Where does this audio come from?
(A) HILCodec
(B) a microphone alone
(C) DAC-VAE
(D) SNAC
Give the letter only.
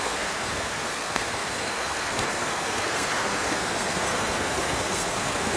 D